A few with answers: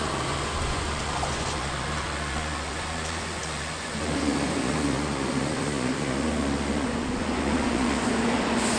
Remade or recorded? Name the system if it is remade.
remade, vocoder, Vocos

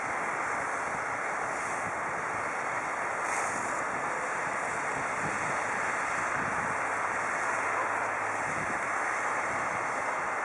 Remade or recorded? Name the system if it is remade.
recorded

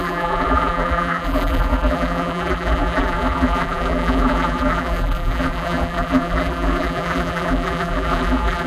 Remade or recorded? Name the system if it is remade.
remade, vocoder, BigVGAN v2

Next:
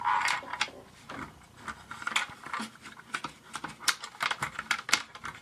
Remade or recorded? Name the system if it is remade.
recorded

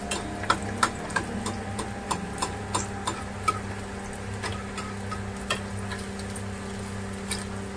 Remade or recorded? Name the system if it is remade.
recorded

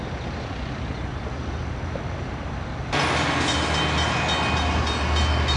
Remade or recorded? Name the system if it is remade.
recorded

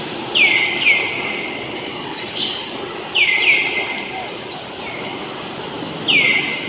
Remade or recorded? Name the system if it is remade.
recorded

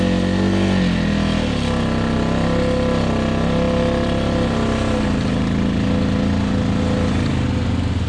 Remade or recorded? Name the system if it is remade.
recorded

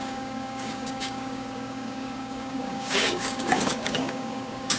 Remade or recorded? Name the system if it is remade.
remade, codec, DAC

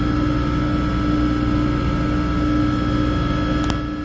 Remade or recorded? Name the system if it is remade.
recorded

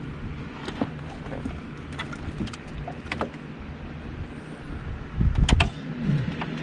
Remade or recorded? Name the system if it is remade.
recorded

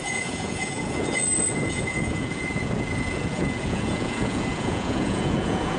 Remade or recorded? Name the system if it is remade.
remade, vocoder, Vocos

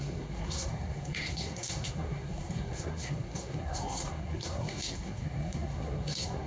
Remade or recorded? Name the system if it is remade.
remade, codec, SNAC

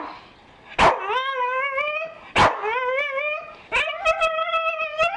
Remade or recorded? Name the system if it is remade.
recorded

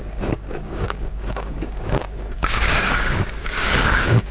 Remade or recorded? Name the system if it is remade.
remade, codec, DAC